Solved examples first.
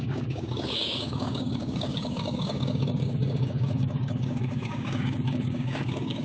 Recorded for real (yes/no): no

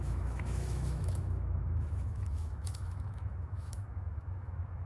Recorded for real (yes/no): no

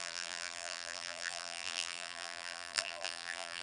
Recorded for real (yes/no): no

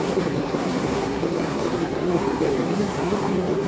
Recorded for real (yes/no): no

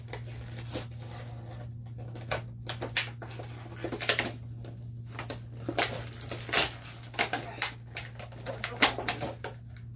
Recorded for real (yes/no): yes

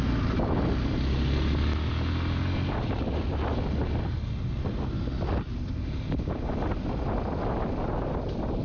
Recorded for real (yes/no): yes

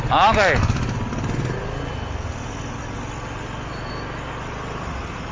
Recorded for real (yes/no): yes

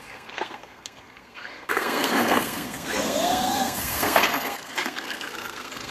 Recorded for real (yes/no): no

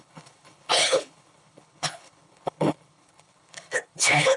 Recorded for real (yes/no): no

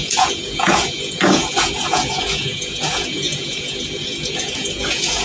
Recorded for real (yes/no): no